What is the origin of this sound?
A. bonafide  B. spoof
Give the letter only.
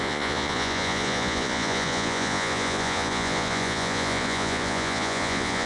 B